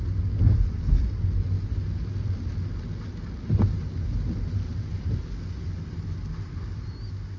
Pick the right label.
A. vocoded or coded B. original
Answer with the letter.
B